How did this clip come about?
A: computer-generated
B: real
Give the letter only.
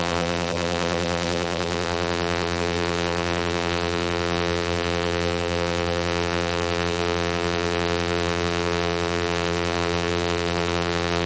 A